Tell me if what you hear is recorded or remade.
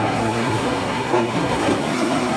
remade